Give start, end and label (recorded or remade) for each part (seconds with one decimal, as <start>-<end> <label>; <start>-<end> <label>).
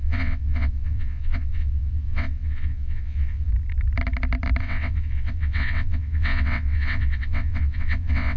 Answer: 0.0-3.5 remade; 3.5-4.6 recorded; 4.6-8.4 remade